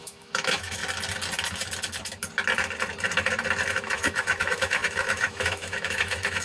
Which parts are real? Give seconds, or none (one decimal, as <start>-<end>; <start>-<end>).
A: 0.8-3.7